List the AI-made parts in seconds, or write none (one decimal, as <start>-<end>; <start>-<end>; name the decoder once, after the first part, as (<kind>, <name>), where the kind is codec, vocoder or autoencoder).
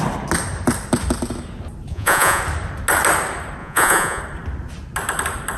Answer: 1.9-2.4 (vocoder, Vocos); 3.6-4.2